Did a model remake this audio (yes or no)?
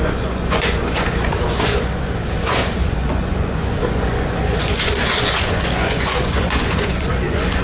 yes